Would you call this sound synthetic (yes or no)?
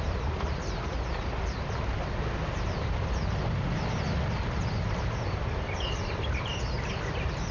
no